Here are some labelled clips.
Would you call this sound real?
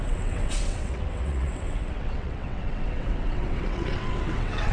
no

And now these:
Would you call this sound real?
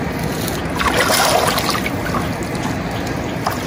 yes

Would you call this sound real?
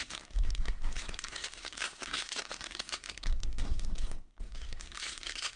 no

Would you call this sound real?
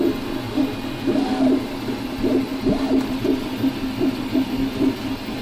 yes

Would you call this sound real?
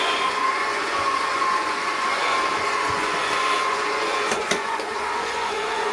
no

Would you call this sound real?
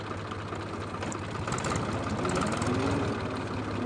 yes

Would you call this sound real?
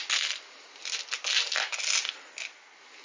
yes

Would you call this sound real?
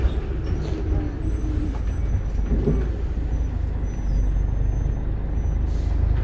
yes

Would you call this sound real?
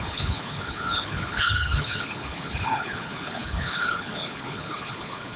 no